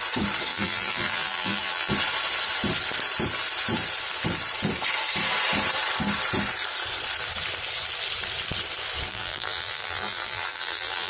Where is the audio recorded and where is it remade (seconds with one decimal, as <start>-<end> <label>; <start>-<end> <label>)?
0.0-0.5 recorded; 0.5-1.9 remade; 1.9-9.1 recorded; 9.1-11.1 remade